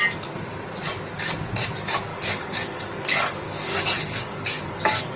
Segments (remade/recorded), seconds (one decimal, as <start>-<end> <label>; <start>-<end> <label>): 0.0-2.1 recorded; 2.1-5.2 remade